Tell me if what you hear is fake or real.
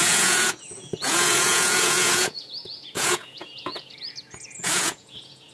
fake